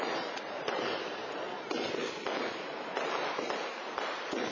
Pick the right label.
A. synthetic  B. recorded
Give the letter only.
A